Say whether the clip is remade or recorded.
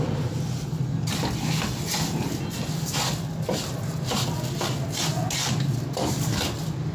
recorded